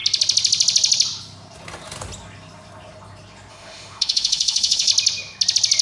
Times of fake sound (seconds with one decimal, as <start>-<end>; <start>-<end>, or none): 3.5-4.9